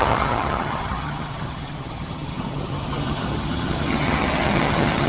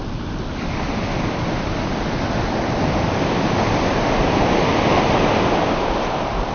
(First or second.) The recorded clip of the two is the second